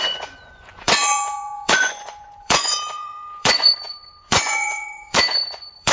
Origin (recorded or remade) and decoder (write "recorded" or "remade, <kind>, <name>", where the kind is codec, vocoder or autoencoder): remade, vocoder, Vocos